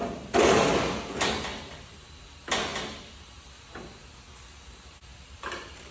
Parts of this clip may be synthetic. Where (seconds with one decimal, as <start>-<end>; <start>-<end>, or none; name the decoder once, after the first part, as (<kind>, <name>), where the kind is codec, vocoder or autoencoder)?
5.1-5.9 (vocoder, BigVGAN v2)